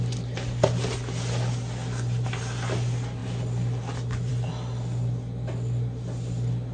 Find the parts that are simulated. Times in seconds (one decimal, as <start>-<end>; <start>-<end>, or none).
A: none